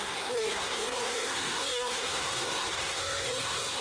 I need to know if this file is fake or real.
fake